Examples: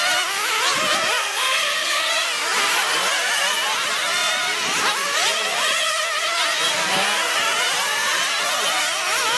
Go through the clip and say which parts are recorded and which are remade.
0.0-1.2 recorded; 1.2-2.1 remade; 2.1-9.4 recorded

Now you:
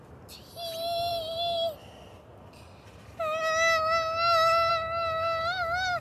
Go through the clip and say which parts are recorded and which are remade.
0.0-6.0 recorded

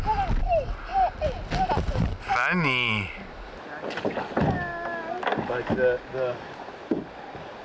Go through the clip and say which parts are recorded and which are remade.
0.0-6.1 recorded; 6.1-7.6 remade

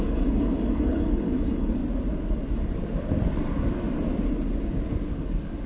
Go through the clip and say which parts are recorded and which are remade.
0.0-1.8 remade; 1.8-5.2 recorded; 5.2-5.7 remade

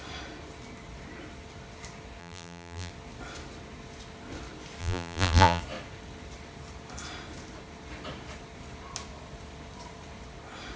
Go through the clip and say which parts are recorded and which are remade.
0.0-2.2 recorded; 2.2-2.9 remade; 2.9-4.8 recorded; 4.8-5.6 remade; 5.6-10.8 recorded